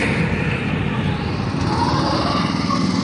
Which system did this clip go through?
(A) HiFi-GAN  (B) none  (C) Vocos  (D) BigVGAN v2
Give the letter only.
B